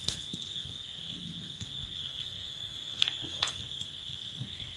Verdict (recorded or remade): remade